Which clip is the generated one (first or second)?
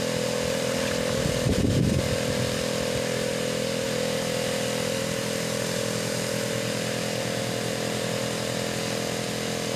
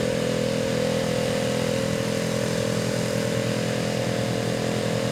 first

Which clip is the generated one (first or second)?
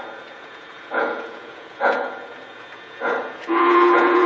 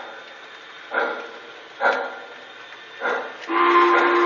first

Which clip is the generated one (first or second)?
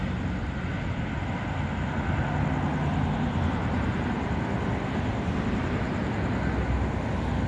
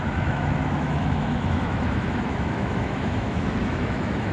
second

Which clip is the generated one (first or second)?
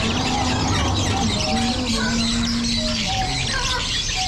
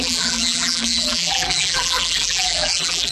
second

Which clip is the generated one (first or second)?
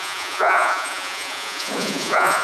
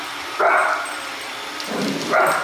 first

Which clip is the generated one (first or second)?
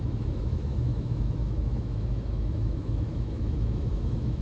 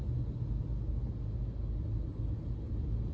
first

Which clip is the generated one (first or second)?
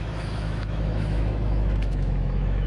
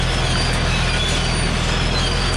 first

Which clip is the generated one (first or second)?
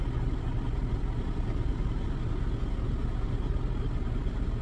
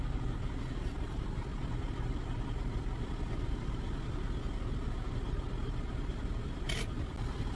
second